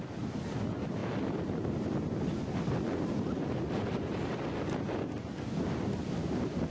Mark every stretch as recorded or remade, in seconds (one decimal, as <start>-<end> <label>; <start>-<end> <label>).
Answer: 0.0-6.7 recorded